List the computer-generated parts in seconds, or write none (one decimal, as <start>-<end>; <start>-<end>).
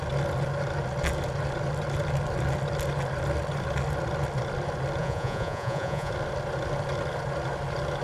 5.0-6.1